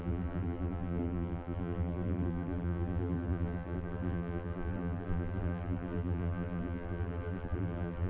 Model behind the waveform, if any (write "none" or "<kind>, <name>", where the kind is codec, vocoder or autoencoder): vocoder, BigVGAN v2